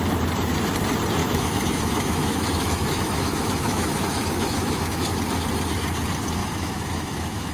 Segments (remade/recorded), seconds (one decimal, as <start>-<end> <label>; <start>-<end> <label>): 0.0-1.2 recorded; 1.2-5.2 remade; 5.2-6.4 recorded; 6.4-7.5 remade